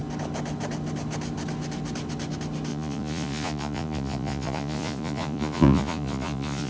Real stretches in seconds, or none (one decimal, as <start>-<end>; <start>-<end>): 0.0-2.7